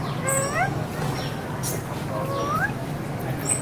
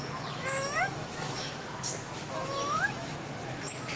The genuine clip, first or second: first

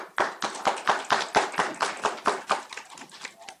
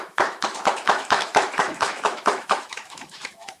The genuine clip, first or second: first